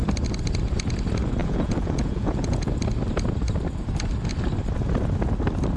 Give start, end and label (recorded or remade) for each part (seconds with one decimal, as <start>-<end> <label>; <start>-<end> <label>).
0.0-1.4 recorded; 1.4-2.7 remade; 2.7-5.8 recorded